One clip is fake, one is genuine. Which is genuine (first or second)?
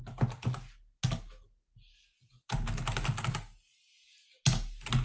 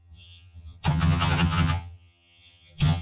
first